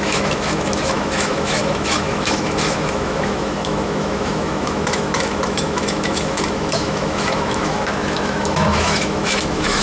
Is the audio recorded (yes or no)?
no